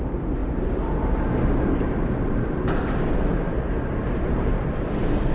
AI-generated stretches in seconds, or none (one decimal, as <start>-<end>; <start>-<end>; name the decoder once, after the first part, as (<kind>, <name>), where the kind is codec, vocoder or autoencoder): none